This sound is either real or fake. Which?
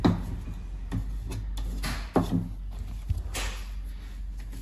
real